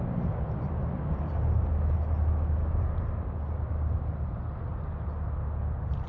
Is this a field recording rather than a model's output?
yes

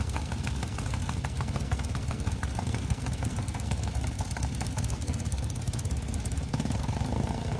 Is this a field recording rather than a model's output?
no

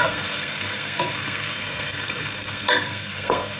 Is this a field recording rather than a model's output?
no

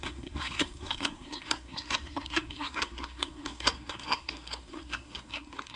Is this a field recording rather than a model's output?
no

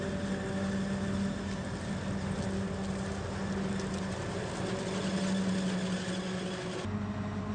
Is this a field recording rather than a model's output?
yes